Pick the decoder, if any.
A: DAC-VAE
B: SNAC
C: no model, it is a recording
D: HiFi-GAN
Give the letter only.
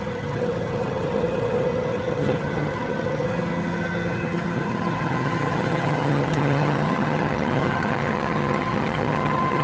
D